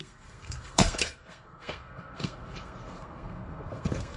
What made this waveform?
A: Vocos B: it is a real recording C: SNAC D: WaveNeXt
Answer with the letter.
C